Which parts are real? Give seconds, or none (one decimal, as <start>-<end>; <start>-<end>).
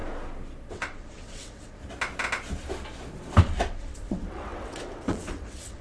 0.0-0.7; 1.8-3.4